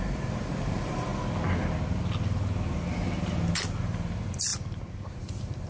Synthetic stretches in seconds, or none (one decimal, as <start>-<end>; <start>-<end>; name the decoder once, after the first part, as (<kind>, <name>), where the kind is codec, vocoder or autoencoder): 0.0-1.1 (vocoder, BigVGAN v2); 3.8-4.5; 5.1-5.7